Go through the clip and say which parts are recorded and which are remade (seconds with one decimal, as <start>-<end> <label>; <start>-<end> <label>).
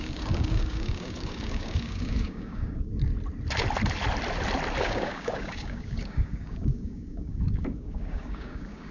0.0-3.1 remade; 3.1-4.8 recorded; 4.8-8.9 remade